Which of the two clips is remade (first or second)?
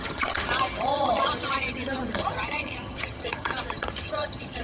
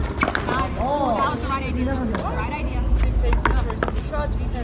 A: first